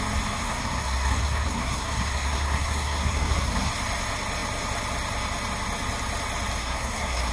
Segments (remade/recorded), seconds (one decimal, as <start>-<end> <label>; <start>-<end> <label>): 0.0-0.4 recorded; 0.4-3.7 remade; 3.7-6.6 recorded; 6.6-7.3 remade